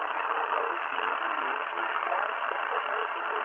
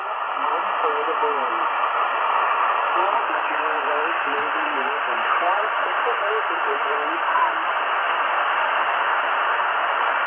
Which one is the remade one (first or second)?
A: first